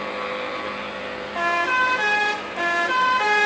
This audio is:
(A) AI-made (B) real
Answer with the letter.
A